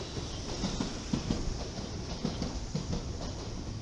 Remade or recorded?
remade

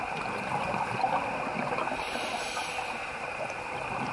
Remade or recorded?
recorded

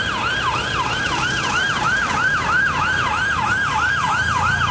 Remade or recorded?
recorded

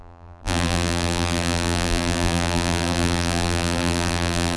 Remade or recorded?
remade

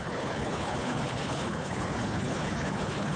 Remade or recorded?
remade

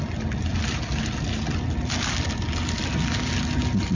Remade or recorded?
recorded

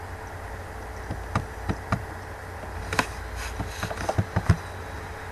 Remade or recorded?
recorded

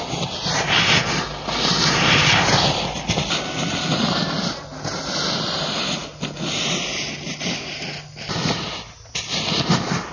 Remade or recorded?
recorded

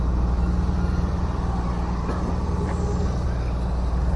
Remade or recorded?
recorded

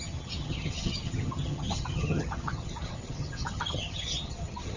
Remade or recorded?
remade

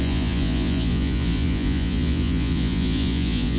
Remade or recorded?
remade